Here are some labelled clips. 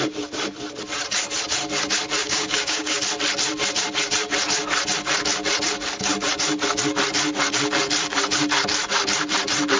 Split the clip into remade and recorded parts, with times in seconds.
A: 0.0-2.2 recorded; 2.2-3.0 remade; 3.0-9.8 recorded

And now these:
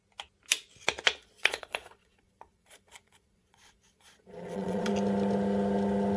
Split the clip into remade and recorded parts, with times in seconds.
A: 0.0-1.2 recorded; 1.2-4.9 remade; 4.9-6.2 recorded

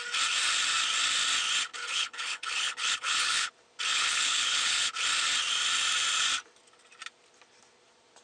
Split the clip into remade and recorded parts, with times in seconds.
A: 0.0-1.7 recorded; 1.7-3.5 remade; 3.5-3.9 recorded; 3.9-4.9 remade; 4.9-8.2 recorded